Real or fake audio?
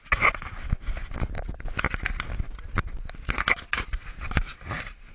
real